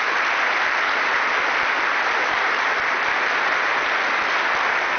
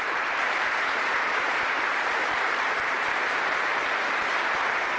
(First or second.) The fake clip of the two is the second